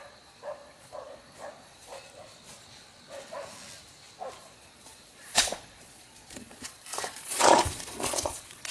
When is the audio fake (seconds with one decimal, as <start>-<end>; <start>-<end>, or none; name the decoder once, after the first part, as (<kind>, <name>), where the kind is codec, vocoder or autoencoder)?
0.0-1.9 (vocoder, Vocos); 4.4-8.7